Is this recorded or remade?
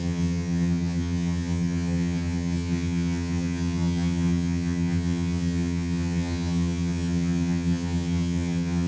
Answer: remade